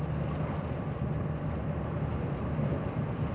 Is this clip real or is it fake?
real